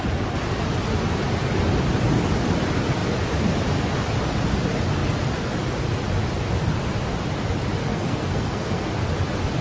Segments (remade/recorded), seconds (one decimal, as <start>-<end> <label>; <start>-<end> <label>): 0.0-7.8 recorded; 7.8-8.9 remade; 8.9-9.6 recorded